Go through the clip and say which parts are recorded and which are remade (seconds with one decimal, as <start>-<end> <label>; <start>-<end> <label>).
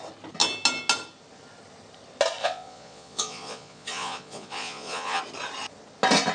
0.0-2.4 recorded; 2.4-5.2 remade; 5.2-6.3 recorded